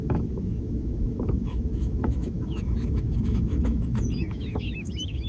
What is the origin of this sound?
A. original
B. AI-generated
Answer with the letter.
B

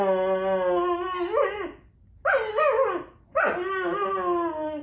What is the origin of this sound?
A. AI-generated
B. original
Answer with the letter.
B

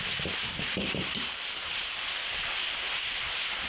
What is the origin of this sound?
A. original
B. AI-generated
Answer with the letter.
A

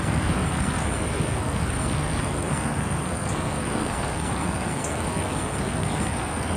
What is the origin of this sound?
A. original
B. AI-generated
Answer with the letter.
B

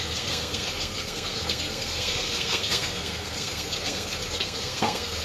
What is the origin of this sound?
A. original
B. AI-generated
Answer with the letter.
B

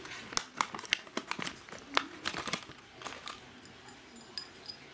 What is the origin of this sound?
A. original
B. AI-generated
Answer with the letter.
A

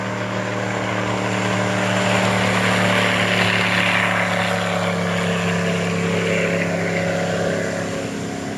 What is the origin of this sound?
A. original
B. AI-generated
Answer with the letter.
A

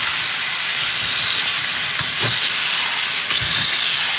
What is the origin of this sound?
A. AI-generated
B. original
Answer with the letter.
B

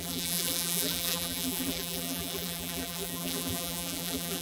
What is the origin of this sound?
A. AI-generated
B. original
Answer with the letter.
A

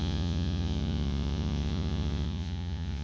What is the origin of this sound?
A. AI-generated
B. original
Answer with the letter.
A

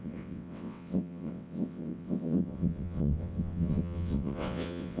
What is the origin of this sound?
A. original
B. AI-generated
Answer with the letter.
B